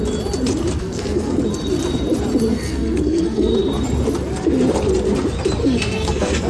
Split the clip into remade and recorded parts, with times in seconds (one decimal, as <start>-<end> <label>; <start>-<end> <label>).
0.0-0.8 recorded; 0.8-1.4 remade; 1.4-2.5 recorded; 2.5-3.5 remade; 3.5-5.6 recorded; 5.6-6.5 remade